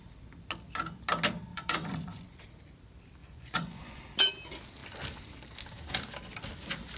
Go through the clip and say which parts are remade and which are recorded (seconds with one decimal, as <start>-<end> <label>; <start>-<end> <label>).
0.0-1.5 recorded; 1.5-2.2 remade; 2.2-3.2 recorded; 3.2-4.0 remade; 4.0-7.0 recorded